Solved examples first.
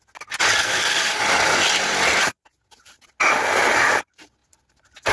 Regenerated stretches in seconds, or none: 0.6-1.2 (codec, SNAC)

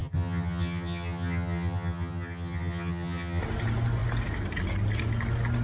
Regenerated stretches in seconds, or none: 0.0-3.4 (vocoder, HiFi-GAN)

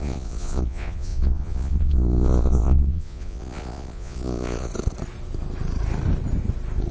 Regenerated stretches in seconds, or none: 0.0-4.7 (vocoder, Vocos)

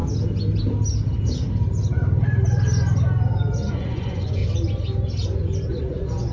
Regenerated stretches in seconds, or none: 3.7-4.4 (vocoder, Vocos); 5.7-6.3

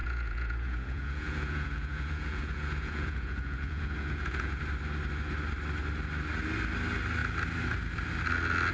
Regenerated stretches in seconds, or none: 0.0-4.6 (vocoder, Vocos)

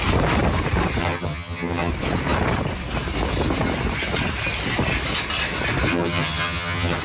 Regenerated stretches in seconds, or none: 1.0-1.9 (vocoder, HiFi-GAN); 5.9-7.0